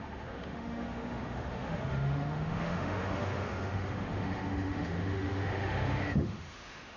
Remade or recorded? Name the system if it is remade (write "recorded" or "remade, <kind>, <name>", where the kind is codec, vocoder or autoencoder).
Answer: remade, autoencoder, DAC-VAE